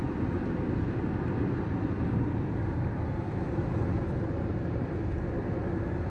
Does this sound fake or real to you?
real